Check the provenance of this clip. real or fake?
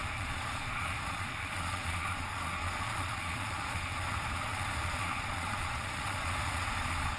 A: fake